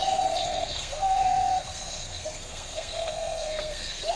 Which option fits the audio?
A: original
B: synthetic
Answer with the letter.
B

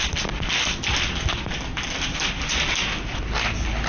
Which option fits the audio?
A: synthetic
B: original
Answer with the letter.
B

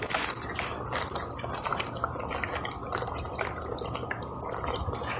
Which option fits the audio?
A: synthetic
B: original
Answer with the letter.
B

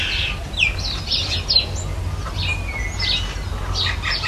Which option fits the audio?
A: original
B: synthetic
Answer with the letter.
A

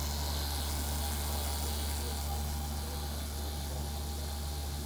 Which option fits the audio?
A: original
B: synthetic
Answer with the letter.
A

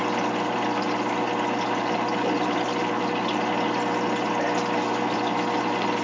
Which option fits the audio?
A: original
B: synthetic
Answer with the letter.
A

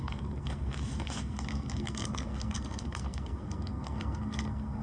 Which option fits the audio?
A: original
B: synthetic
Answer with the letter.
B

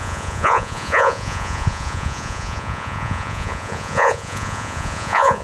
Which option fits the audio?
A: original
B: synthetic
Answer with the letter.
B